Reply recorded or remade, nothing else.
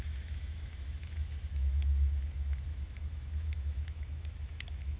remade